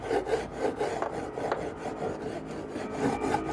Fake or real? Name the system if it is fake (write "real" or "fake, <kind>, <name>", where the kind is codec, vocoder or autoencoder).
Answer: real